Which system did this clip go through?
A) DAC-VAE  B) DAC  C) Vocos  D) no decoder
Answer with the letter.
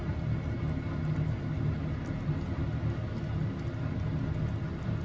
D